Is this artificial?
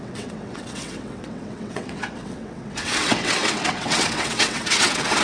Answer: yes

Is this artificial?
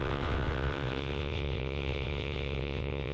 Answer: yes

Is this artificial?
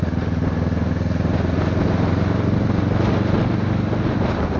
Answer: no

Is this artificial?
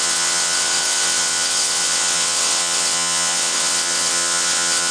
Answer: yes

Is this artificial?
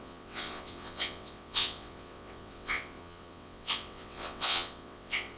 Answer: yes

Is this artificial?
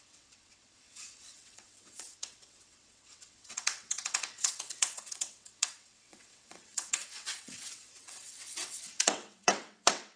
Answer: yes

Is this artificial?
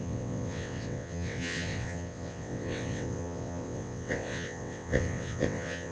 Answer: yes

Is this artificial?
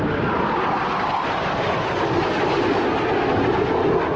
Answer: no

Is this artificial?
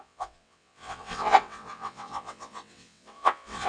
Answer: yes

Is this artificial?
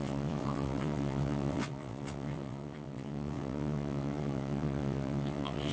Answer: yes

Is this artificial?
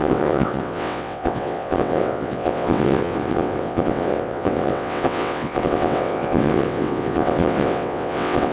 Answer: yes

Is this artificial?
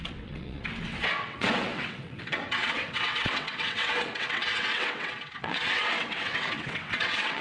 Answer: yes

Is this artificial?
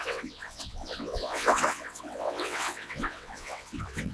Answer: yes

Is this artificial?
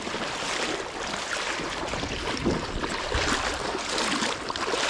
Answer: no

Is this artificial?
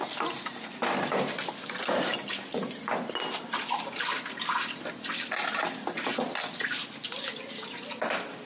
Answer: no